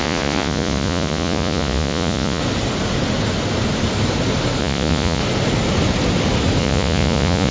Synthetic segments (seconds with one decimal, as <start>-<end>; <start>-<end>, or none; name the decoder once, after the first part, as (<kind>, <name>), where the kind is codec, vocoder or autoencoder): 0.0-2.4 (vocoder, Vocos); 4.6-5.2; 6.6-7.5